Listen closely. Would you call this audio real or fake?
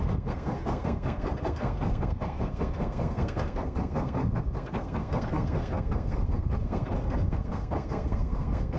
fake